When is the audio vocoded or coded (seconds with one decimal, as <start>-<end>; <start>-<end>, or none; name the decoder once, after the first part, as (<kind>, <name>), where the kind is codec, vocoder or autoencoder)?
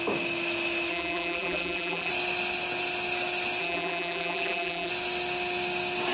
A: 0.9-2.1 (vocoder, BigVGAN v2); 3.6-4.9